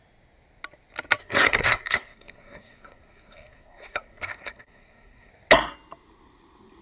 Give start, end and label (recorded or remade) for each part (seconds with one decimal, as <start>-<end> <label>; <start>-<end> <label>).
0.0-1.2 recorded; 1.2-5.3 remade; 5.3-6.8 recorded